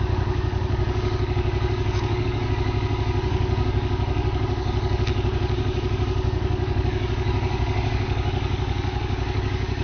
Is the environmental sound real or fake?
fake